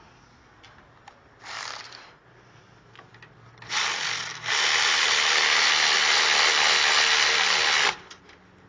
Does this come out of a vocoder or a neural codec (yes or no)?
no